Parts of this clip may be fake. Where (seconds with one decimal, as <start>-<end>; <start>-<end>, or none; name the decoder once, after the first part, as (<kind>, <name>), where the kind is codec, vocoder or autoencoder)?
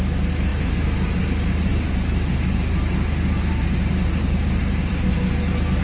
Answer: none